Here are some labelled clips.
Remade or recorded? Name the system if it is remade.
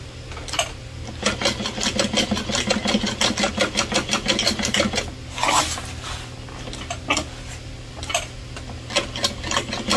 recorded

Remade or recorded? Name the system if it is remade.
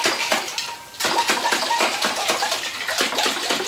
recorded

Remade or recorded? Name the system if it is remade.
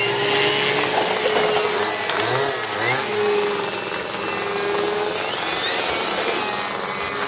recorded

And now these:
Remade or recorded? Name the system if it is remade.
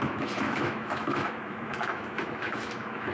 remade, autoencoder, DAC-VAE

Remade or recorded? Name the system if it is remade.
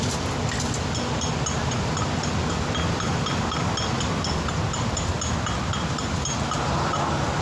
recorded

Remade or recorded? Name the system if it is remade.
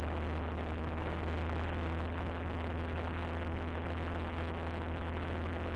recorded